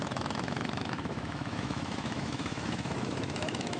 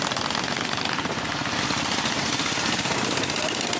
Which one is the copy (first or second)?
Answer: first